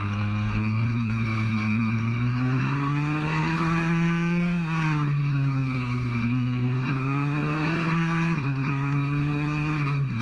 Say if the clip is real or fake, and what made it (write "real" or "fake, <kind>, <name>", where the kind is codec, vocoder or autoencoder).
fake, codec, SNAC